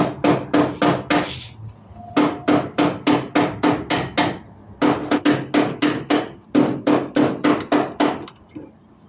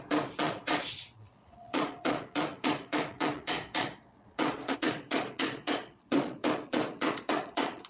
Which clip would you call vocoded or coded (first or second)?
second